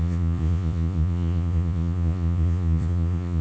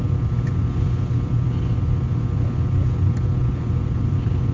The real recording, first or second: second